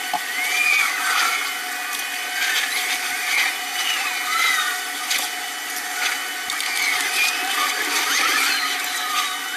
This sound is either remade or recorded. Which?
recorded